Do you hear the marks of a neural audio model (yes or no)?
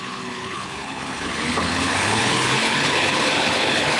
yes